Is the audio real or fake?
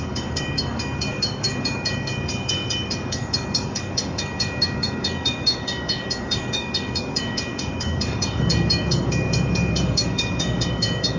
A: fake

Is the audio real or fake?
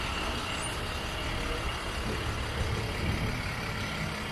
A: real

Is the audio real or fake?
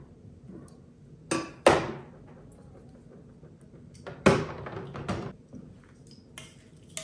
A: real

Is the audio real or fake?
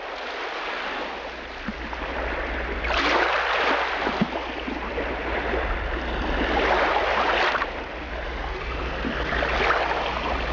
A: real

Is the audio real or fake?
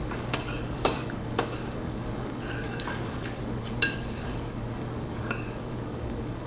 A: fake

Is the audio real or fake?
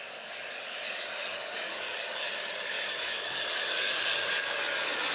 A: fake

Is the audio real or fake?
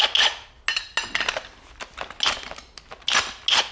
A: real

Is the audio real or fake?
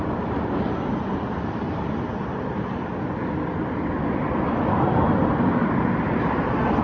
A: real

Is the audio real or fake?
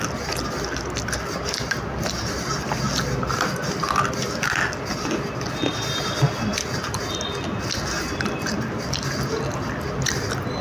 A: real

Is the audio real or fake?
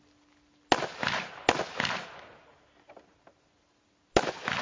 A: real